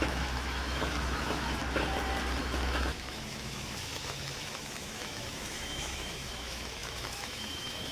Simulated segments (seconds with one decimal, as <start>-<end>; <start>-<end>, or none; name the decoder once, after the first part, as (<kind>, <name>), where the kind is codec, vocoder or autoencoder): 0.0-1.6 (autoencoder, DAC-VAE); 2.4-7.9